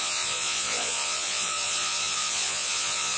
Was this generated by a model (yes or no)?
yes